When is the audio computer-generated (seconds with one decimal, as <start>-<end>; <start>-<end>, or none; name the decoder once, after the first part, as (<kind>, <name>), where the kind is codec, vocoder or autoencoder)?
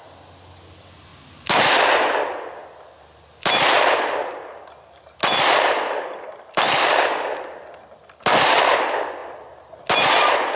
none